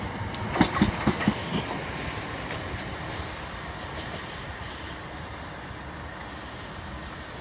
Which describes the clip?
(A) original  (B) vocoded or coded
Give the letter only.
A